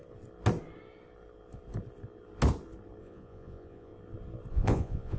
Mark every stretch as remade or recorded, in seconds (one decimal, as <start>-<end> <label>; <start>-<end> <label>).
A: 0.0-3.0 recorded; 3.0-3.9 remade; 3.9-4.5 recorded; 4.5-5.2 remade

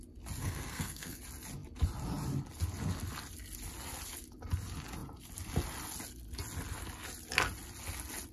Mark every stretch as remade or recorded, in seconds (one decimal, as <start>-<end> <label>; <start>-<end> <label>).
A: 0.0-0.4 recorded; 0.4-1.2 remade; 1.2-8.3 recorded

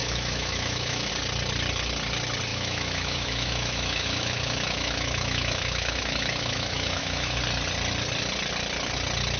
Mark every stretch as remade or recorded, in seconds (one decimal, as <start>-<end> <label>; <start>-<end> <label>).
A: 0.0-1.1 remade; 1.1-2.5 recorded; 2.5-7.4 remade; 7.4-9.4 recorded

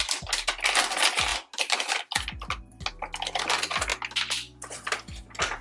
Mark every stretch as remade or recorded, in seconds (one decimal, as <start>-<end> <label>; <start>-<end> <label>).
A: 0.0-5.6 recorded

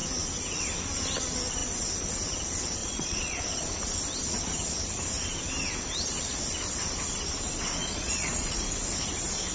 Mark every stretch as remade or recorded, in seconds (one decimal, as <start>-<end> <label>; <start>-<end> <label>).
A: 0.0-2.8 recorded; 2.8-3.4 remade; 3.4-7.8 recorded; 7.8-8.6 remade; 8.6-9.5 recorded